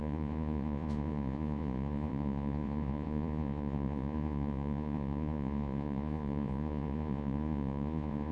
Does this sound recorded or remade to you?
remade